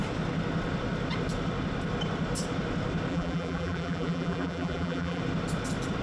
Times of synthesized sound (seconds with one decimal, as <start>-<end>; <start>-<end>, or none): 3.1-5.2